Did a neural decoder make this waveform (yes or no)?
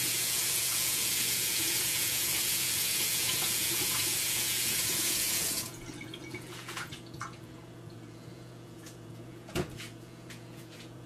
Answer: yes